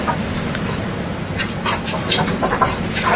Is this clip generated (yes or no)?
yes